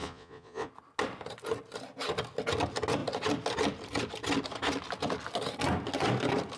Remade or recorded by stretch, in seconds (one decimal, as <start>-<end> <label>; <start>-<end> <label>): 0.0-0.7 remade; 0.7-6.6 recorded